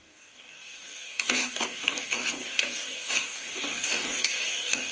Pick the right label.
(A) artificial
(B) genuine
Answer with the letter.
A